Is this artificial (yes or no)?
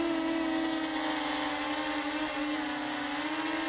no